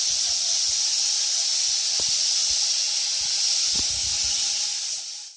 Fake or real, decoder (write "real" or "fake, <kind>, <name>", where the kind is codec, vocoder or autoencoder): real